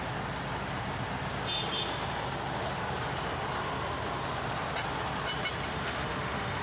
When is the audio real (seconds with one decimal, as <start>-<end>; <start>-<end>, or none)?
0.0-5.7